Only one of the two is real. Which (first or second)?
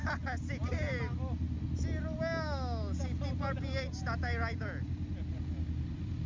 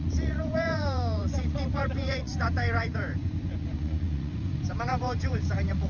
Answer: first